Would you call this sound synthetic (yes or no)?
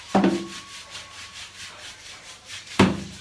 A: yes